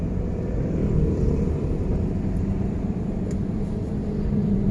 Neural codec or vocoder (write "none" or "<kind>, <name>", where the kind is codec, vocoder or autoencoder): vocoder, BigVGAN v2